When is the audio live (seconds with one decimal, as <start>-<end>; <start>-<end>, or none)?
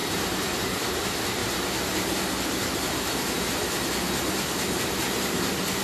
1.4-4.8